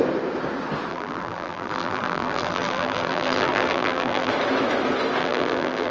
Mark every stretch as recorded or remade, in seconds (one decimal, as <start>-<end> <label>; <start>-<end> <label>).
0.0-0.9 recorded; 0.9-4.3 remade; 4.3-5.2 recorded; 5.2-5.9 remade

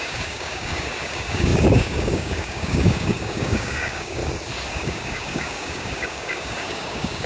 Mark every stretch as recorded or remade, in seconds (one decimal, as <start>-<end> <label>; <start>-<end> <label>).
0.0-4.2 remade; 4.2-4.7 recorded; 4.7-7.3 remade

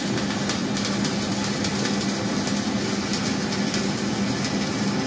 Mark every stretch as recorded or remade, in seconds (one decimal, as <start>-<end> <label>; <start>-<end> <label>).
0.0-5.1 recorded

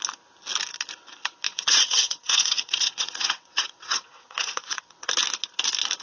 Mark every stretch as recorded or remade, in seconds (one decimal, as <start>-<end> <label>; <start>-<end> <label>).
0.0-1.5 recorded; 1.5-5.1 remade; 5.1-6.0 recorded

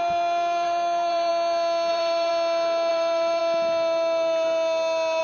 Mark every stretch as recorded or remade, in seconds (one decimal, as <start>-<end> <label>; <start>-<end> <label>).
0.0-1.3 remade; 1.3-1.9 recorded; 1.9-2.3 remade; 2.3-2.9 recorded; 2.9-3.4 remade; 3.4-5.2 recorded

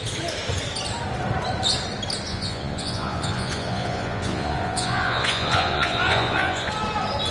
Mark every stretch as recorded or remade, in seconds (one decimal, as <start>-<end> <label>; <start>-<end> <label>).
0.0-2.3 recorded; 2.3-6.7 remade; 6.7-7.3 recorded